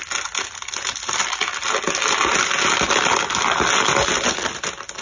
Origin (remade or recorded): recorded